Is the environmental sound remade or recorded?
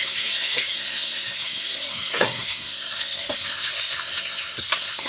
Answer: remade